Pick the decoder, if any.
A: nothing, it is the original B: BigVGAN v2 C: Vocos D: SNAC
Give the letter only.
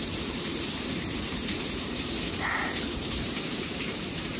B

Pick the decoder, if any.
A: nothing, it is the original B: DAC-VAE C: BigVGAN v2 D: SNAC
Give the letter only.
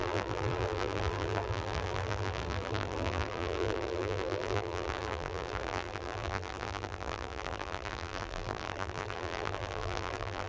C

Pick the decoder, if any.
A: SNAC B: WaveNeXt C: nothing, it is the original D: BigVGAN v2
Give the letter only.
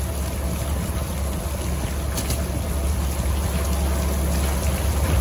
C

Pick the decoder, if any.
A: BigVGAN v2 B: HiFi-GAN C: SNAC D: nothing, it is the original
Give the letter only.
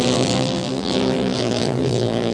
A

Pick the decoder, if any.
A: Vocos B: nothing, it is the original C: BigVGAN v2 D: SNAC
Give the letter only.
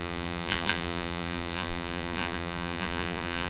C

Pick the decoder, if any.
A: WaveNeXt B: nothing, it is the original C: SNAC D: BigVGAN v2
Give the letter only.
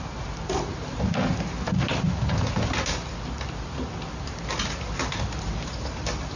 B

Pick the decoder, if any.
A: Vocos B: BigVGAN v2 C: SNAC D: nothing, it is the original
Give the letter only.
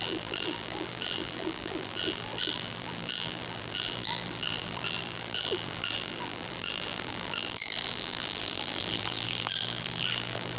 B